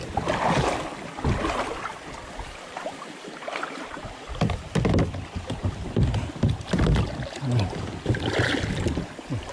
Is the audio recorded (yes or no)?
yes